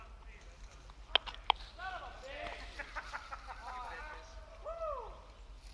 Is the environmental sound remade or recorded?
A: recorded